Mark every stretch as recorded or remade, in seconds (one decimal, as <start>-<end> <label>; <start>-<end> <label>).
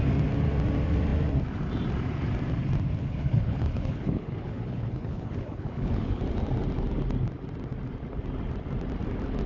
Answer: 0.0-3.0 recorded; 3.0-6.2 remade; 6.2-9.5 recorded